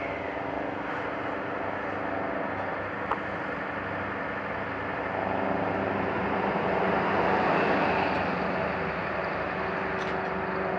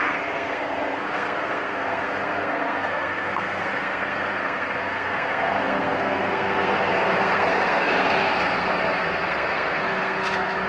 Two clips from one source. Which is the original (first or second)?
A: first